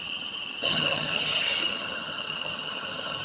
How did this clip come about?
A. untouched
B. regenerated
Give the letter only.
B